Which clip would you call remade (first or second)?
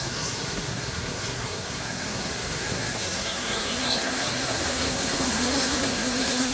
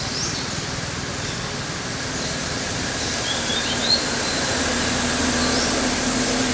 first